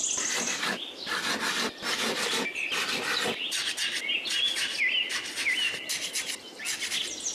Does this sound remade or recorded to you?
recorded